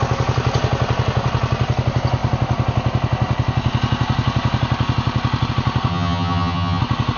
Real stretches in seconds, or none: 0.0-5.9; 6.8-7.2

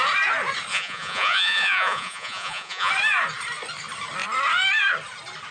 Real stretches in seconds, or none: 0.0-0.7; 2.9-5.5